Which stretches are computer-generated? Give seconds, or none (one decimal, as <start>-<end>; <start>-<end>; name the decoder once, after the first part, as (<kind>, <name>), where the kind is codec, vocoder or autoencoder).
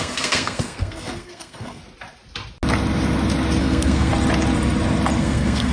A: 0.0-1.8 (codec, SNAC); 3.6-4.1; 5.2-5.7